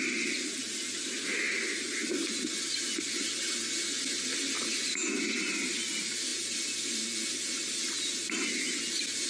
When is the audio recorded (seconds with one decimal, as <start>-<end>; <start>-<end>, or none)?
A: 0.0-9.3